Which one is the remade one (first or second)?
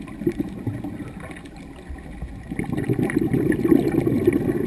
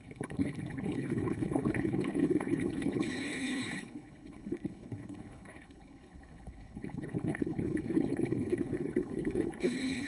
second